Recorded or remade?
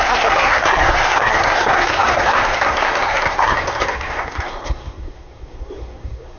remade